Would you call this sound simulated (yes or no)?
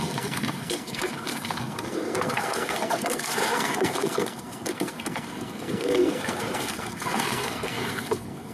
yes